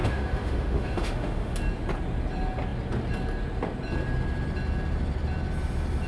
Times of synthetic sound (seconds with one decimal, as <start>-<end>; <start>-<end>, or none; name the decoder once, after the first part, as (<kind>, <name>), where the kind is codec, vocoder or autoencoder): 0.0-1.6 (autoencoder, DAC-VAE)